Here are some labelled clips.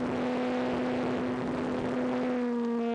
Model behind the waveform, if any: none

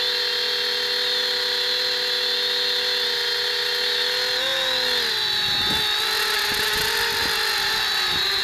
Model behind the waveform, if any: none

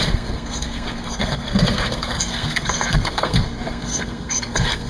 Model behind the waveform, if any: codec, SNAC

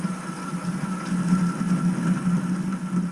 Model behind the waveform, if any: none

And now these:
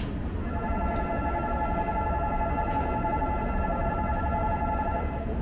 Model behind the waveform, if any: none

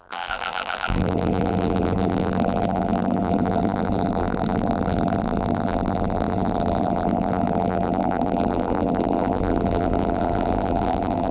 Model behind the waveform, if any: vocoder, BigVGAN v2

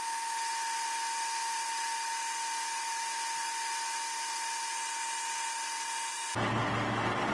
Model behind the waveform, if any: none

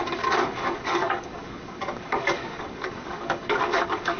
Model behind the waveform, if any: codec, DAC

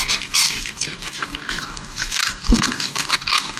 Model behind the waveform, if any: codec, DAC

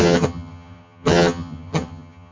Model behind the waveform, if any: vocoder, HiFi-GAN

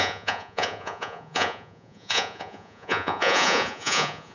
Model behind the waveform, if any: vocoder, Vocos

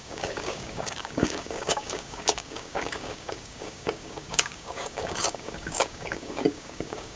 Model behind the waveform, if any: codec, DAC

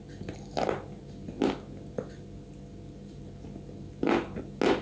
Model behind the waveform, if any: none